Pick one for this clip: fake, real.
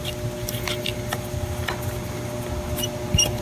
real